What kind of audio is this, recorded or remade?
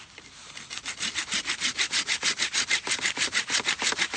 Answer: recorded